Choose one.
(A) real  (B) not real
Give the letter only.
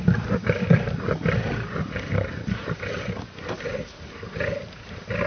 A